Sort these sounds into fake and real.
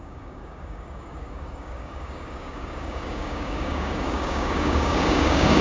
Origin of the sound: fake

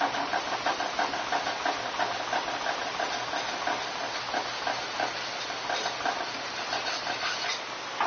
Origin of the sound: real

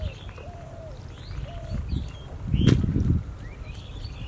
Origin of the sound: real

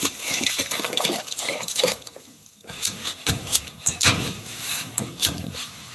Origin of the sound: fake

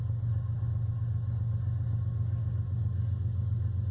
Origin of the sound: real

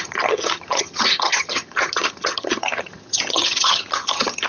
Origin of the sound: fake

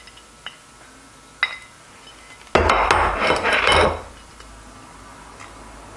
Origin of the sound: real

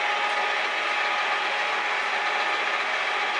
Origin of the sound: real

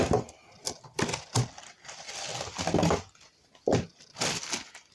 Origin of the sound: real